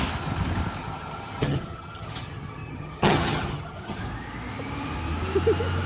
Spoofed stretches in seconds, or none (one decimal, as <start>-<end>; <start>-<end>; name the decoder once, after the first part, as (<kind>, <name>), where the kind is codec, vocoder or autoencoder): 0.8-4.0 (vocoder, HiFi-GAN)